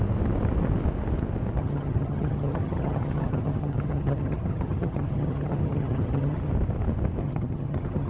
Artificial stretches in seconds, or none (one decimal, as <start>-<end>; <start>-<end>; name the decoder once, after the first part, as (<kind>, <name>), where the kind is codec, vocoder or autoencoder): 1.6-6.5 (vocoder, HiFi-GAN); 7.2-8.1